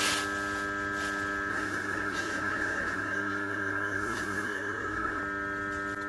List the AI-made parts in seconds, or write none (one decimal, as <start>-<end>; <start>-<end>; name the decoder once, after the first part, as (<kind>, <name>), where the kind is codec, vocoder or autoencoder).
1.5-5.2 (codec, SNAC)